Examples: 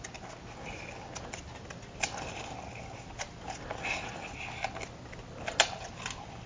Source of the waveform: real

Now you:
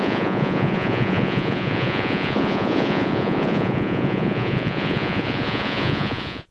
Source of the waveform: fake